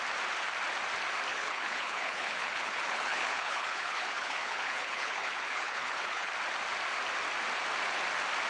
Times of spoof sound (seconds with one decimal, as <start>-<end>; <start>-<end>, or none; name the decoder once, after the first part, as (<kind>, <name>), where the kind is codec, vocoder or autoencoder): 1.3-6.3 (codec, HILCodec)